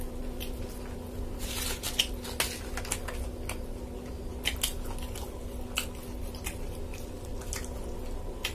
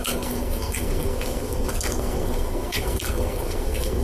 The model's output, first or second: second